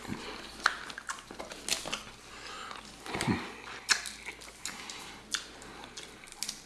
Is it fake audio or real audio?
real